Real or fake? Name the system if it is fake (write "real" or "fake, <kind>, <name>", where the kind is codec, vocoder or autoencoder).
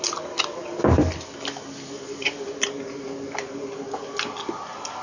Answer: real